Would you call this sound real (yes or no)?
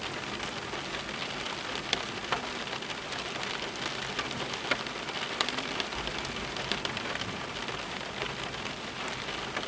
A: yes